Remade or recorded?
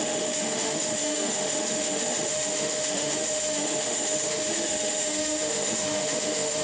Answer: remade